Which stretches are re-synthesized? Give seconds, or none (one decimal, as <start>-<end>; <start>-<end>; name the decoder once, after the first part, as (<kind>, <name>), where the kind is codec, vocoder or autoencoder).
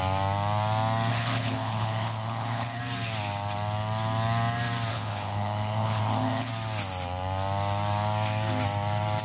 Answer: 1.1-2.8 (codec, HILCodec); 4.9-6.5